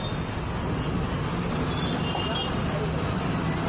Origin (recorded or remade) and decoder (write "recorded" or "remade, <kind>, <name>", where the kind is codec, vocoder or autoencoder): recorded